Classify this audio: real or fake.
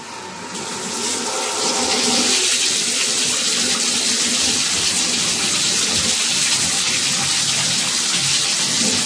real